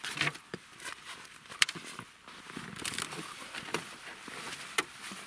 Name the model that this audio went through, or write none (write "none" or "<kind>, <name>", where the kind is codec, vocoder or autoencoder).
vocoder, BigVGAN v2